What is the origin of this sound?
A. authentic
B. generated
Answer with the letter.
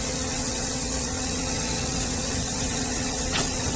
B